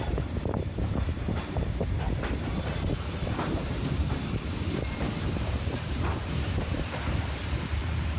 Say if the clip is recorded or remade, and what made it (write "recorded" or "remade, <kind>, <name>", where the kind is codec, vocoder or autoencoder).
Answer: remade, vocoder, BigVGAN v2